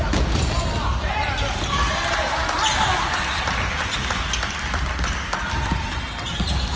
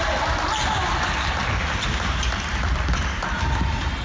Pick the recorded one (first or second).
first